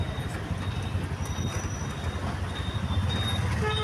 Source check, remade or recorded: recorded